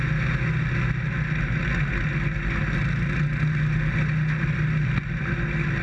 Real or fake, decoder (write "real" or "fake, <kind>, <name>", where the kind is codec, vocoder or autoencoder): real